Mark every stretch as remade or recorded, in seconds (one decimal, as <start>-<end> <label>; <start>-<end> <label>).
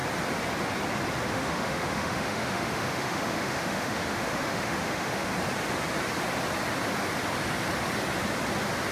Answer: 0.0-1.3 recorded; 1.3-5.3 remade; 5.3-8.9 recorded